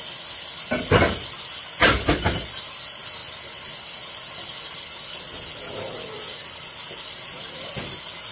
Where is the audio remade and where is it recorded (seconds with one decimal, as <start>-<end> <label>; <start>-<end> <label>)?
0.0-8.3 recorded